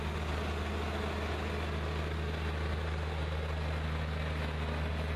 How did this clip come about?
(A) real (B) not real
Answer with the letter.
A